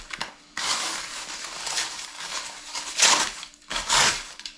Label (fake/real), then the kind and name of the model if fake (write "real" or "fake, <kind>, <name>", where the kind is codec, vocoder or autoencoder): fake, codec, DAC